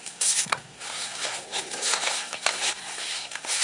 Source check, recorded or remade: remade